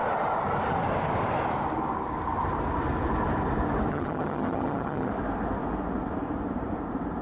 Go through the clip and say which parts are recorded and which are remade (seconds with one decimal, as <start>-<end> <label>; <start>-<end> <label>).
0.0-3.9 recorded; 3.9-5.1 remade; 5.1-7.2 recorded